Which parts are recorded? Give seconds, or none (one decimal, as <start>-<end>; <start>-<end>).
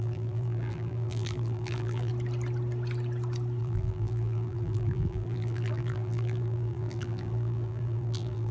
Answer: 2.1-3.6